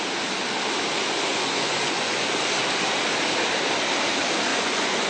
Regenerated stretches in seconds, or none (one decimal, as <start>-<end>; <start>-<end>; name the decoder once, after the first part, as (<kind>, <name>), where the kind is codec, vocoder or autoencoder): 1.3-2.3 (vocoder, Vocos); 4.5-5.1